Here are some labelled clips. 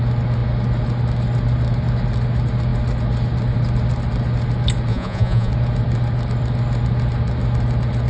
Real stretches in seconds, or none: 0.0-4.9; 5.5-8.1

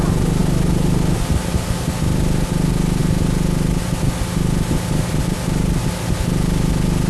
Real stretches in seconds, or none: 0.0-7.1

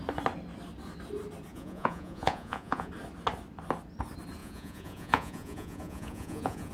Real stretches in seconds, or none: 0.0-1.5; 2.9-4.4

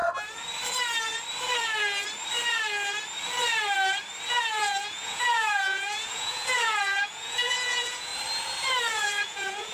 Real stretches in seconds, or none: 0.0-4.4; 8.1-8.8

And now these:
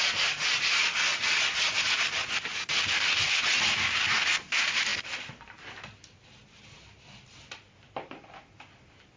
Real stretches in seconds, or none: 0.0-9.2